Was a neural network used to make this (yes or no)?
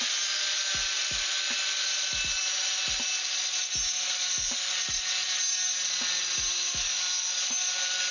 no